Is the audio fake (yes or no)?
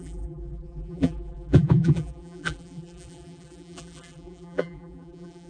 yes